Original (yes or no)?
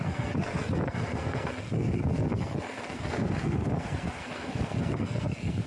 no